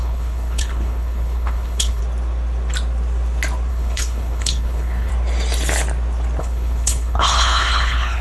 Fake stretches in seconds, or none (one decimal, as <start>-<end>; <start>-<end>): 0.0-2.0; 3.7-5.1; 6.4-8.2